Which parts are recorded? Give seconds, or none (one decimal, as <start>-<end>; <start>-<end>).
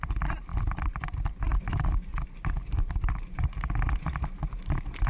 0.0-2.1; 3.5-5.1